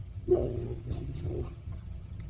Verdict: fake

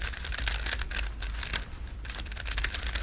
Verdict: real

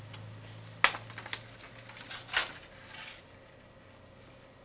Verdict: real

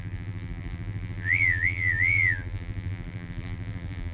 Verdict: fake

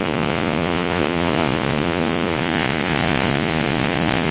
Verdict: fake